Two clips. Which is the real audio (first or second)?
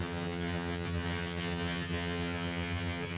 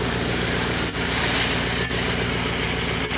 second